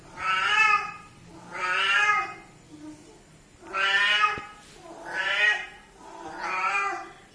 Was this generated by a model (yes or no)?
no